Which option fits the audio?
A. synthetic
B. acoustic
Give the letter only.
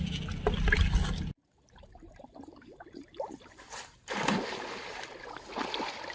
B